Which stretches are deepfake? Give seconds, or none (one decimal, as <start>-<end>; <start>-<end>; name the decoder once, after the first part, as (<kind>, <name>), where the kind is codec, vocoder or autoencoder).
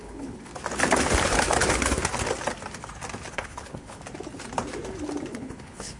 0.0-0.5 (codec, HILCodec); 3.3-4.0; 5.3-6.0